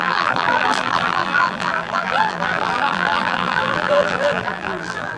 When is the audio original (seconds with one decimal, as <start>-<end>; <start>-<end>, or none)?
none